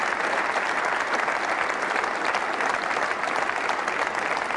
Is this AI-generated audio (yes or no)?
no